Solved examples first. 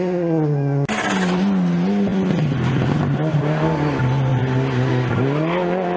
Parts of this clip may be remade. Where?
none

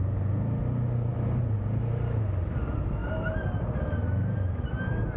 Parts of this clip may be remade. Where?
none

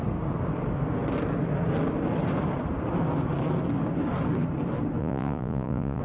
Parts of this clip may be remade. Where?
5.0-6.0 (vocoder, Vocos)

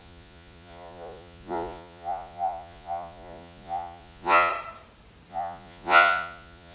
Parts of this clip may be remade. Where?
0.0-4.5 (vocoder, Vocos); 5.3-6.7

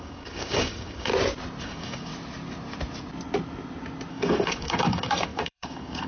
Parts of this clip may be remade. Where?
0.0-1.1 (codec, DAC); 1.6-2.1; 4.1-6.1